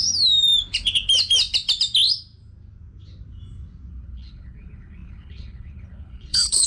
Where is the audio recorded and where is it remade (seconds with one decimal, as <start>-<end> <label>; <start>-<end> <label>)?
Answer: 0.0-3.9 recorded; 3.9-6.7 remade